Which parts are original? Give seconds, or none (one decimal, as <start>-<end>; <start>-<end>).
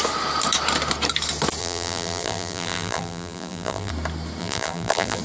0.0-1.6; 3.9-4.4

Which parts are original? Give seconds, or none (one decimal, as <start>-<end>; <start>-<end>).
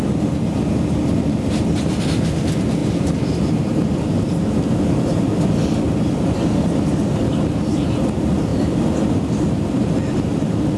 0.0-2.8; 4.0-8.5; 9.1-10.8